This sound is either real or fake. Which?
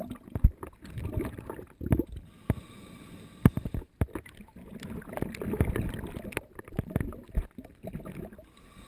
real